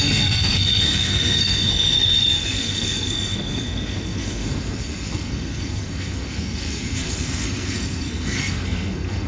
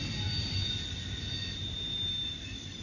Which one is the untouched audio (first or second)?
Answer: second